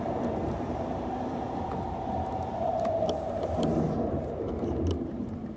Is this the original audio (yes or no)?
no